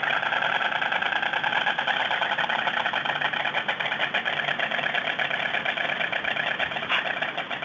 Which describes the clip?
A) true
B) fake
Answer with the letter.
A